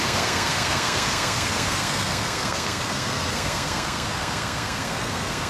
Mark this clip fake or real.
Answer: fake